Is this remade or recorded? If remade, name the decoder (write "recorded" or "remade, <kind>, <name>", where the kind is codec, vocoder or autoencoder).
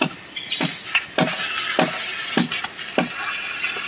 recorded